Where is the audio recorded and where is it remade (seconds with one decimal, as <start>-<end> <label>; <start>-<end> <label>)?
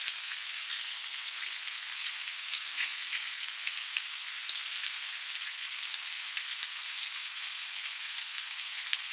0.0-9.1 remade